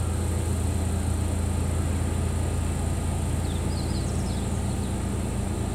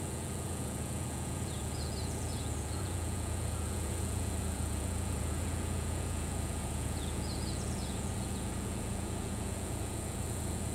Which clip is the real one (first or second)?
first